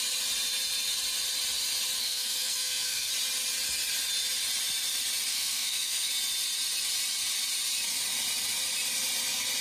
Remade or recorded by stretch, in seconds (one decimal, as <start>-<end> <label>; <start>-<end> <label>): 0.0-2.0 recorded; 2.0-3.1 remade; 3.1-5.3 recorded; 5.3-6.1 remade; 6.1-9.6 recorded